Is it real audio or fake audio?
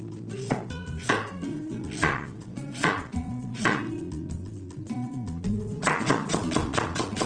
fake